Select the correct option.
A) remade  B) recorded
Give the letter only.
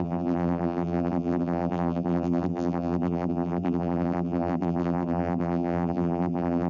A